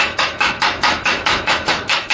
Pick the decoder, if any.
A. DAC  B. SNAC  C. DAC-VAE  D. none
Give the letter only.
C